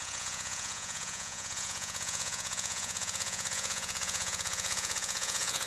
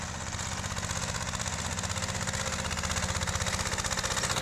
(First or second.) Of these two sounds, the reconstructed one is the first